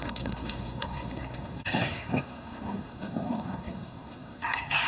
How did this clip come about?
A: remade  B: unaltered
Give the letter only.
A